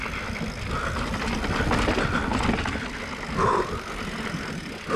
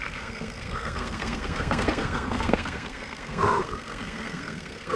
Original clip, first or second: first